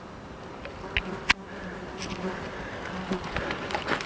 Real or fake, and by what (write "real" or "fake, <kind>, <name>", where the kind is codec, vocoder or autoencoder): real